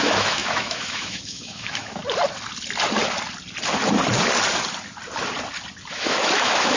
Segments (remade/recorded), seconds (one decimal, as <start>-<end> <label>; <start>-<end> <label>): 0.0-2.0 remade; 2.0-5.9 recorded; 5.9-6.8 remade